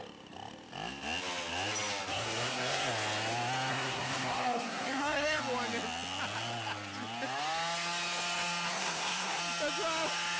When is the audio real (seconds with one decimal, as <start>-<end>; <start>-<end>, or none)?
0.0-2.1; 2.9-3.7; 5.4-8.7; 9.4-10.4